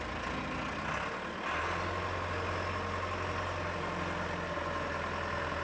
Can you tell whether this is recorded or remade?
recorded